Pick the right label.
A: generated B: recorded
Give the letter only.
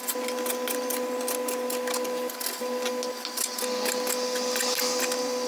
B